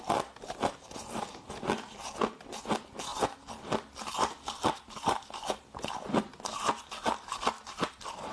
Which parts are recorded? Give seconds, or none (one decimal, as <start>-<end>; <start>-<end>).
0.0-8.3